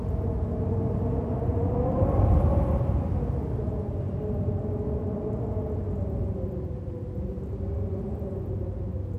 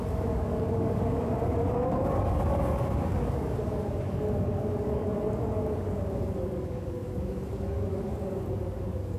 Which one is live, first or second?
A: first